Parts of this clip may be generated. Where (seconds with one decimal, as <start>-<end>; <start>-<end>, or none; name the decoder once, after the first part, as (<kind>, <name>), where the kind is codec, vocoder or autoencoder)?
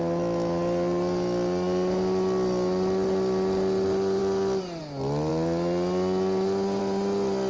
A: none